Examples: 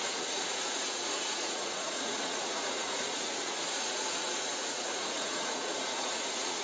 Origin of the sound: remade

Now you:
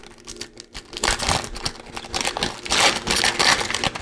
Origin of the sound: recorded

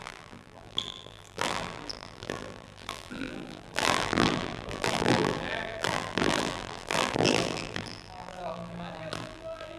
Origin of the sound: remade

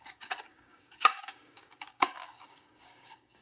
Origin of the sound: remade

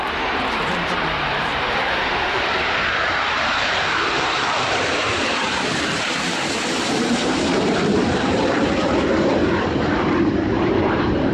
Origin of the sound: remade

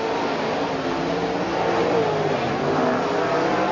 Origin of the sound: recorded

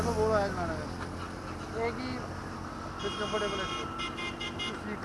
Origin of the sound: recorded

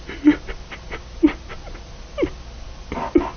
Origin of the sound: recorded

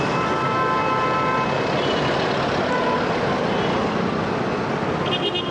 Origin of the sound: recorded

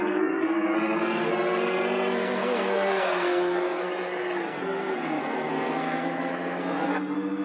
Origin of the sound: remade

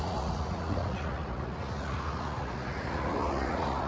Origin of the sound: remade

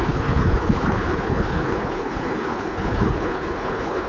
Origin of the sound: remade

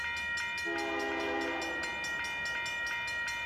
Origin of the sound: recorded